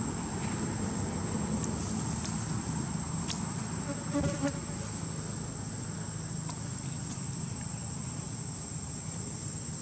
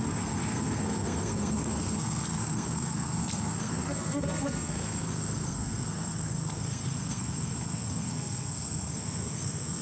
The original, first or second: first